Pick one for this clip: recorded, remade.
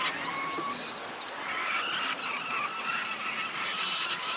recorded